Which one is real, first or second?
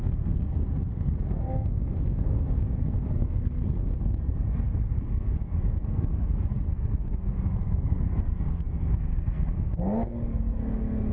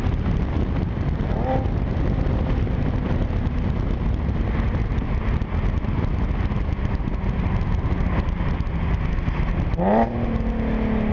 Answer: second